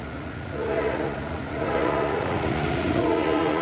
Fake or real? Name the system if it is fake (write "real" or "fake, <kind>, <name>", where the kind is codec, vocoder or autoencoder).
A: fake, vocoder, Vocos